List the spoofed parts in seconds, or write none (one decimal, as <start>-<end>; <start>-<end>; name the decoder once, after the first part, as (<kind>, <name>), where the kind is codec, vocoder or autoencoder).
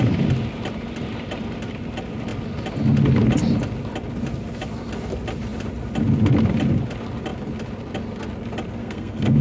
8.8-9.4 (codec, SNAC)